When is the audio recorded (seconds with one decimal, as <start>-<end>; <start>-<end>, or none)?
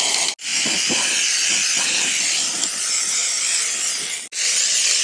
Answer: 0.0-5.0